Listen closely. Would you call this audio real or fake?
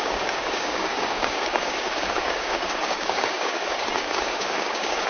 fake